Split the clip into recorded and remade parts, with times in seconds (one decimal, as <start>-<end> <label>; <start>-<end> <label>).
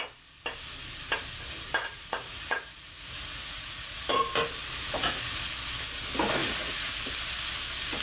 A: 0.0-1.8 recorded; 1.8-4.1 remade; 4.1-4.6 recorded; 4.6-5.5 remade; 5.5-6.4 recorded; 6.4-7.0 remade; 7.0-8.0 recorded